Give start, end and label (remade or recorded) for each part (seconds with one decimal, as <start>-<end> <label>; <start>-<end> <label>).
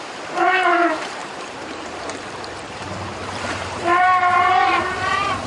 0.0-5.5 remade